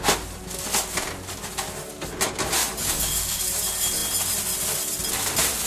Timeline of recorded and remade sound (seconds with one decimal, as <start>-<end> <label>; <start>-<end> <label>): 0.0-2.6 recorded; 2.6-3.4 remade; 3.4-5.7 recorded